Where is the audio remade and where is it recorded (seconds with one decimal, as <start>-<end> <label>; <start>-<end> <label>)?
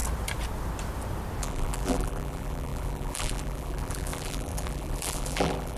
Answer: 0.0-1.4 recorded; 1.4-5.8 remade